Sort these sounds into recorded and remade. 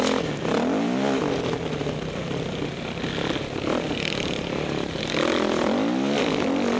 recorded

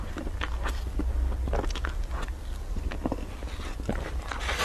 recorded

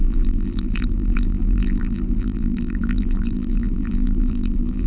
remade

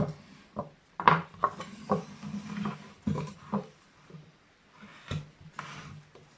remade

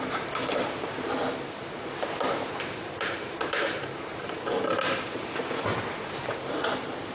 remade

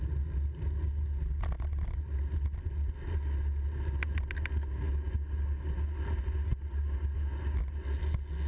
recorded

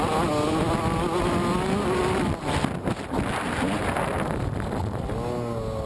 recorded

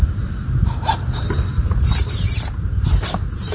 remade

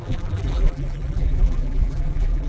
remade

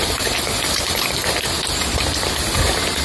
recorded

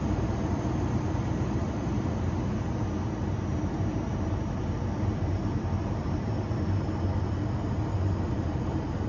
remade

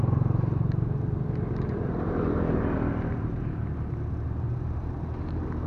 remade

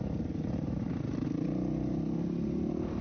recorded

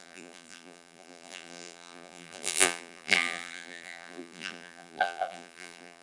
remade